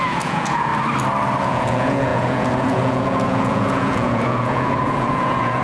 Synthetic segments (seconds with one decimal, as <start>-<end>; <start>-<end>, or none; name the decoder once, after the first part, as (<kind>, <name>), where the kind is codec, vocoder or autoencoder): 0.0-0.7 (vocoder, Vocos); 1.4-5.6